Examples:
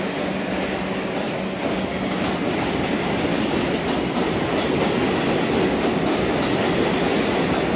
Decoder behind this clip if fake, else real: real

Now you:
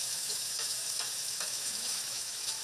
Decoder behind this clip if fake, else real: fake, autoencoder, DAC-VAE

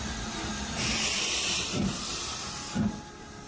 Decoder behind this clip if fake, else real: real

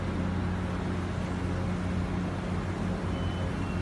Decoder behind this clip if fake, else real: real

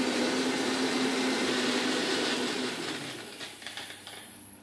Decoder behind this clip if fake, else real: fake, vocoder, BigVGAN v2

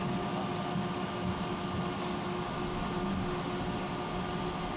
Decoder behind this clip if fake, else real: real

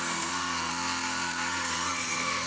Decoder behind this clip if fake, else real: fake, codec, SNAC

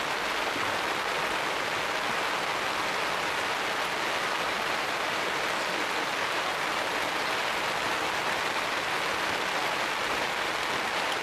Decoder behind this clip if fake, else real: real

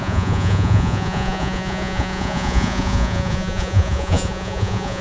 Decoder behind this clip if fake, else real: fake, vocoder, Vocos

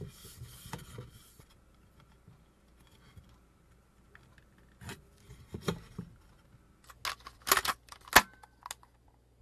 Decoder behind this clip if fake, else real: real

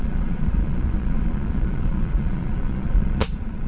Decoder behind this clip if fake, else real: fake, vocoder, Vocos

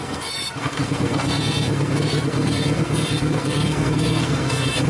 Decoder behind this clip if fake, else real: fake, codec, SNAC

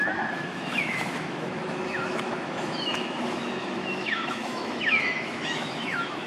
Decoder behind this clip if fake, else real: fake, autoencoder, DAC-VAE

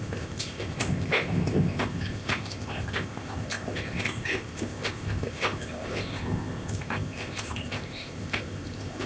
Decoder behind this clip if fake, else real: fake, codec, ZipCodec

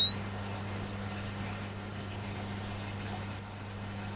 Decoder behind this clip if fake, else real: real